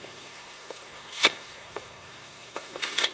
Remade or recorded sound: remade